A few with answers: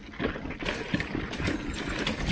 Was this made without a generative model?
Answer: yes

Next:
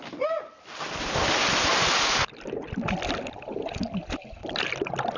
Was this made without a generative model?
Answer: yes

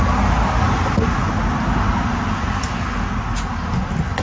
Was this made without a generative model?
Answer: yes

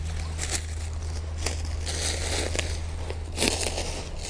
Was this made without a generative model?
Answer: yes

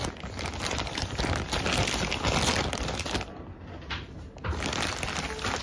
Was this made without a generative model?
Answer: yes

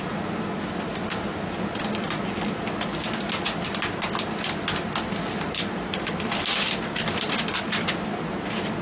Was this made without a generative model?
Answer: no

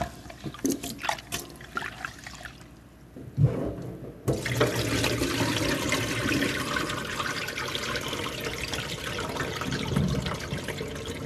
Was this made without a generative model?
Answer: yes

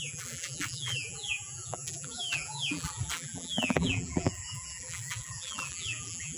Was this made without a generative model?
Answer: no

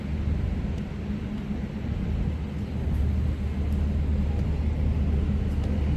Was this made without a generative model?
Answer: yes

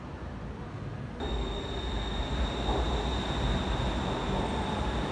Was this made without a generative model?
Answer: yes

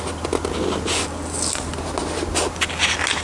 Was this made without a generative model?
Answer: yes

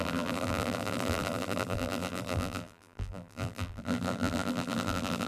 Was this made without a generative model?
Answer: no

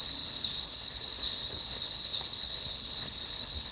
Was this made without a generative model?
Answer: no